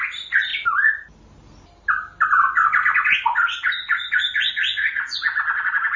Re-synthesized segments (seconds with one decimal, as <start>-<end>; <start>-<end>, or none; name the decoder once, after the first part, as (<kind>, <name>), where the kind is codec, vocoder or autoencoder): 4.8-6.0 (vocoder, Vocos)